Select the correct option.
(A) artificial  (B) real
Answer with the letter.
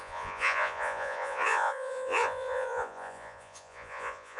A